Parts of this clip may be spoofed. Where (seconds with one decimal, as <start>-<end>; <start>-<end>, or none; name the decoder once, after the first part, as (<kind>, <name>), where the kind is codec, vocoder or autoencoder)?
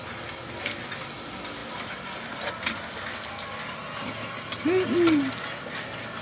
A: none